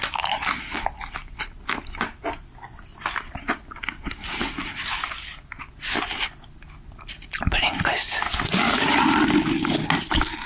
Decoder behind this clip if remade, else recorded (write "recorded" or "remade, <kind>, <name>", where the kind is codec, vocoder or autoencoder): recorded